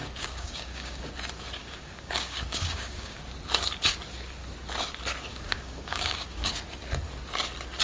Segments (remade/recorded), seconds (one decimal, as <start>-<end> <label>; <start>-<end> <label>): 0.0-1.1 remade; 1.1-1.6 recorded; 1.6-3.2 remade; 3.2-5.3 recorded; 5.3-6.5 remade; 6.5-7.8 recorded